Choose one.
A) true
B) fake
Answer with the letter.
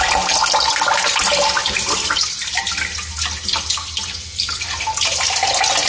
A